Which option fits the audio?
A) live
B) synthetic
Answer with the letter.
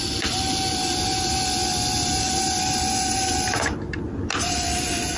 A